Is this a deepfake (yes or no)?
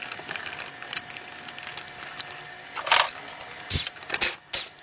no